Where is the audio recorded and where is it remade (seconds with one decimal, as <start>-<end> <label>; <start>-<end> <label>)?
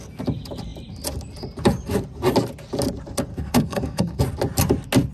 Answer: 0.0-3.3 recorded; 3.3-4.2 remade; 4.2-5.1 recorded